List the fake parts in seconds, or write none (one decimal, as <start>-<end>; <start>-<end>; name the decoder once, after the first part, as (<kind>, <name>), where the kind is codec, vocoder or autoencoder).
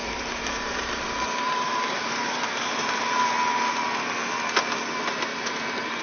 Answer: 0.0-3.0 (vocoder, BigVGAN v2); 5.3-6.0